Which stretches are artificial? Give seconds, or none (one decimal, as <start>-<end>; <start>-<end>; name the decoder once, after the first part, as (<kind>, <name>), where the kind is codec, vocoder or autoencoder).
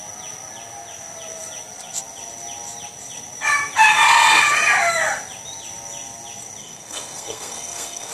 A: 6.6-8.1 (codec, SNAC)